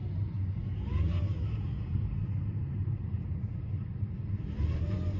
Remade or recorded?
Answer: remade